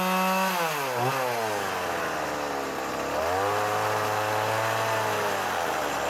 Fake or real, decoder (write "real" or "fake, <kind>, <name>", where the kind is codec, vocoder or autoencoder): real